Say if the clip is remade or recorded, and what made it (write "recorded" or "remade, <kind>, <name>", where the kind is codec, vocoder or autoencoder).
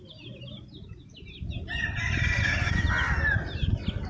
recorded